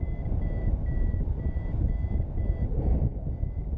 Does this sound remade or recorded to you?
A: recorded